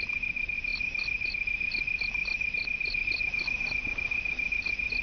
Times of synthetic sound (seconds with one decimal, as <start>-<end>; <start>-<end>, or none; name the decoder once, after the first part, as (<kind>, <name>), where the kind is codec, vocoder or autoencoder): none